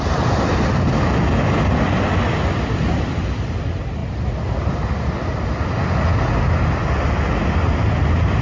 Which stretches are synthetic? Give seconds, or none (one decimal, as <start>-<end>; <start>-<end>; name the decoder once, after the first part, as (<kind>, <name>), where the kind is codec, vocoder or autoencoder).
none